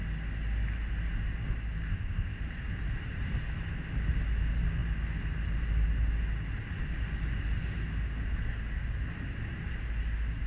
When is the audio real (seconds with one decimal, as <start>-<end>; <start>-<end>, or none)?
0.0-1.9; 2.4-10.5